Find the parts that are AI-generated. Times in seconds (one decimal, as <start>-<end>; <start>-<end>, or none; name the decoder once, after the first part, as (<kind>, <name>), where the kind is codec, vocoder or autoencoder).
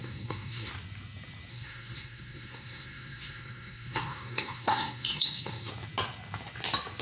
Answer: 0.0-0.7 (codec, SNAC); 1.5-5.7